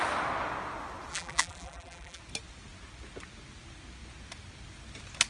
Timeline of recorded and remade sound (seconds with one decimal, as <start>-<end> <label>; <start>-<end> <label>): 0.0-1.1 recorded; 1.1-2.2 remade; 2.2-5.3 recorded